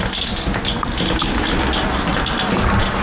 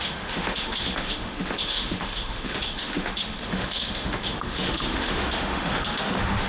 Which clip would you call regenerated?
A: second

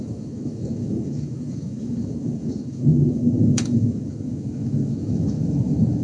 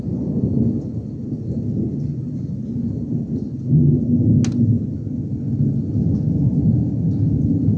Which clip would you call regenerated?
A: first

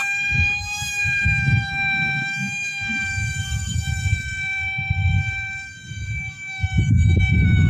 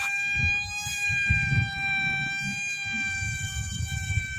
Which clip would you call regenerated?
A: first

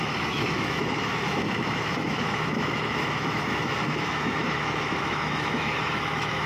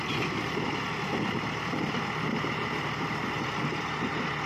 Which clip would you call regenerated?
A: first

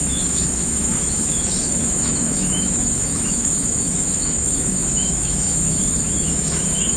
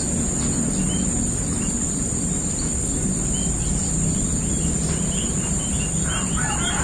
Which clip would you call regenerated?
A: first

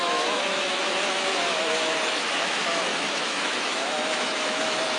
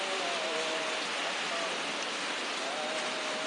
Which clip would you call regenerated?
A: first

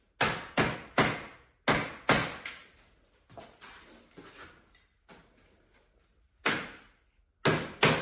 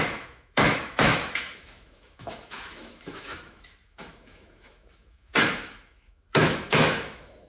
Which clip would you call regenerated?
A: second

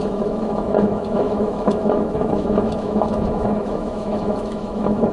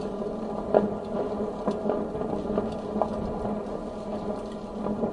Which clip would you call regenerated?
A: first